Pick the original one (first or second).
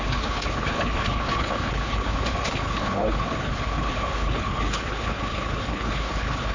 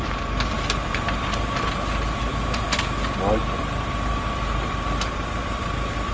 second